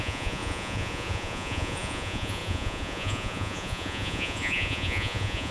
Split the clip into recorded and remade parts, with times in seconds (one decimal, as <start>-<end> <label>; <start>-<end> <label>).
0.0-5.5 remade